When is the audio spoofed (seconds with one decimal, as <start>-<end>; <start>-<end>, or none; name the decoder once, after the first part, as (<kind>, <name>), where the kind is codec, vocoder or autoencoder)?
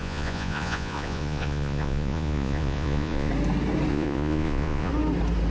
0.0-3.3 (vocoder, Vocos); 3.9-4.9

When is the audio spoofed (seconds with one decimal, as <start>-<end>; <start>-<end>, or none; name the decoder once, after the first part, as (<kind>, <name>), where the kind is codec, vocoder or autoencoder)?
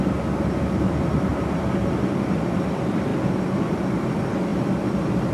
1.3-1.9 (vocoder, BigVGAN v2)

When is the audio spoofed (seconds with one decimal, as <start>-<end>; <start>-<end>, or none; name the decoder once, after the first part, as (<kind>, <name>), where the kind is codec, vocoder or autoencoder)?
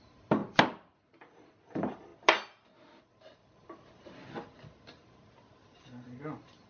0.0-0.4 (vocoder, BigVGAN v2); 1.2-2.1; 3.0-4.2; 5.8-6.7